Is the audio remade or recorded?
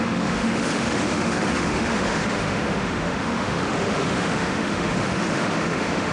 remade